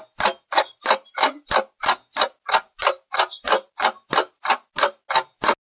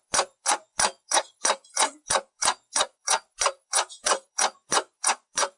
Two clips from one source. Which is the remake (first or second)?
second